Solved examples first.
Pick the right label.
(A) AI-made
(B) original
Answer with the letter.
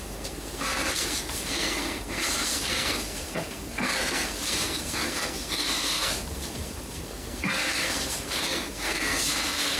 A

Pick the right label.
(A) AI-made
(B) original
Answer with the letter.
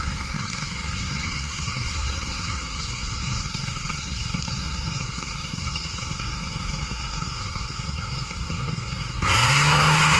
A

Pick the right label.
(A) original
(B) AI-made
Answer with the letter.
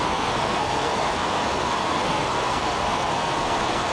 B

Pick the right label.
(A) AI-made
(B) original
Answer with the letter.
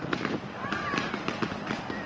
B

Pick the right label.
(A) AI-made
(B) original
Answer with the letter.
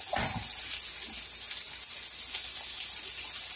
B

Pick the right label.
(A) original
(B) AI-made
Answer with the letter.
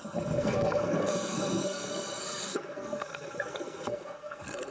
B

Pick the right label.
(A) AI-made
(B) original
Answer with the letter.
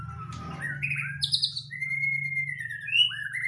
B